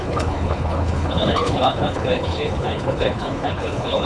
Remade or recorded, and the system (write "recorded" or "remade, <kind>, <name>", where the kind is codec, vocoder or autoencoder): remade, codec, HILCodec